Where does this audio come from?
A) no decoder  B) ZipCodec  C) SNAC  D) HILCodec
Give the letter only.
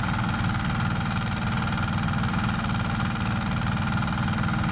A